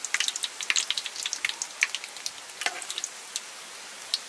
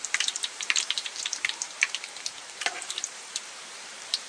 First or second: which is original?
first